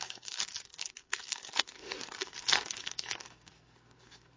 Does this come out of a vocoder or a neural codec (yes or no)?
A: yes